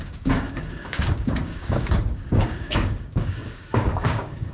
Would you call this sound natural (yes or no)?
no